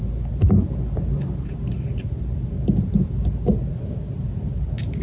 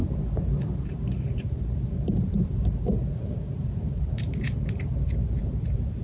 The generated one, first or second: second